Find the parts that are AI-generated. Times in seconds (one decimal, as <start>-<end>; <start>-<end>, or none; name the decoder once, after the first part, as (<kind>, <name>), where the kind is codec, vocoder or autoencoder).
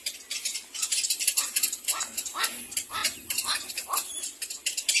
none